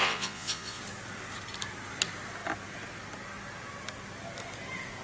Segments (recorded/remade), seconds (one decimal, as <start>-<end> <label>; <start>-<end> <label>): 0.0-0.8 remade; 0.8-5.0 recorded